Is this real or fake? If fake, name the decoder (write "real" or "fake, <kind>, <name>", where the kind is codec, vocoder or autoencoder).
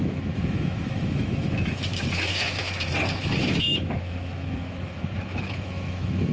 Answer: fake, autoencoder, DAC-VAE